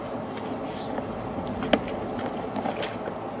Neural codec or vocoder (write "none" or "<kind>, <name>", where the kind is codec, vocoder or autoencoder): none